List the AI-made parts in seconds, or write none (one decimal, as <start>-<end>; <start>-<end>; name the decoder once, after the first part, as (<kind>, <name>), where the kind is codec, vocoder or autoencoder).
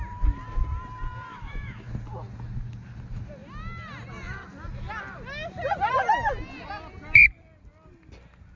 1.3-1.9 (autoencoder, DAC-VAE)